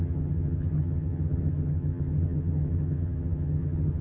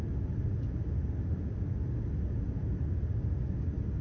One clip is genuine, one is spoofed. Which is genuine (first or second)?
second